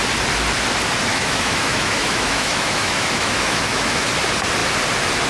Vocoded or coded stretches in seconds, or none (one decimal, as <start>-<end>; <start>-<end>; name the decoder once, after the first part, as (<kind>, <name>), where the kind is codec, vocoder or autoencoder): 1.1-4.1 (autoencoder, DAC-VAE)